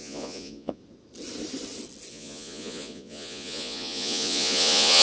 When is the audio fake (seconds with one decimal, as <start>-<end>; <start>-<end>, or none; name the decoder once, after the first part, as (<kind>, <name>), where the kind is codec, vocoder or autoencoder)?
0.0-0.8 (vocoder, Vocos); 2.1-5.0

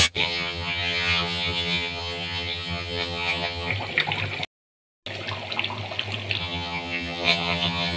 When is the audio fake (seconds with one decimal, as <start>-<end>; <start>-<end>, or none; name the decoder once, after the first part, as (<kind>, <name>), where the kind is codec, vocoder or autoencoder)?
0.0-3.7 (vocoder, HiFi-GAN); 6.4-8.0

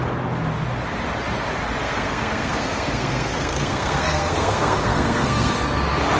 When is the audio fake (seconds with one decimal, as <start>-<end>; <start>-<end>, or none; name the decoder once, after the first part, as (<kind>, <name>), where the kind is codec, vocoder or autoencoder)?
1.8-5.5 (codec, SNAC)

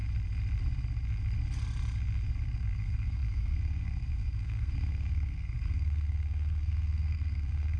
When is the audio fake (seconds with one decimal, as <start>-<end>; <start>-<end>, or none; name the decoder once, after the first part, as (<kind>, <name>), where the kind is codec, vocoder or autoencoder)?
2.6-7.8 (codec, SNAC)

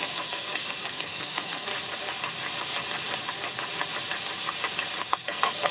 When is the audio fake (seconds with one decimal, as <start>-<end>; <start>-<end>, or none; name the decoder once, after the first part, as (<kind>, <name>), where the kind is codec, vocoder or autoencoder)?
0.0-1.7 (codec, SNAC); 5.1-5.7

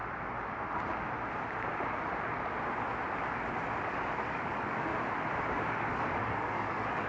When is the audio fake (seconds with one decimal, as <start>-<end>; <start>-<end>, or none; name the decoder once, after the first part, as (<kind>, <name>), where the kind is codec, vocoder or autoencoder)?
4.3-4.9 (codec, DAC); 5.4-7.1